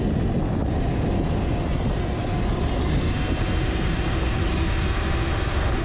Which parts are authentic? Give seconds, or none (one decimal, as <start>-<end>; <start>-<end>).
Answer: 0.0-5.8